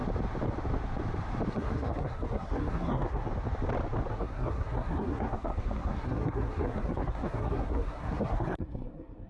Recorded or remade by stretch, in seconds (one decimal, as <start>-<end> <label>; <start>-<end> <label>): 0.0-1.5 recorded; 1.5-3.3 remade; 3.3-4.1 recorded; 4.1-9.3 remade